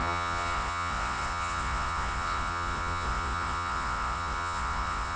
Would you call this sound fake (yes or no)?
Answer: yes